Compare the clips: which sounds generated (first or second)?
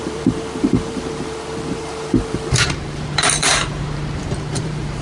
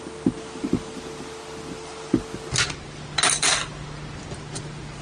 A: first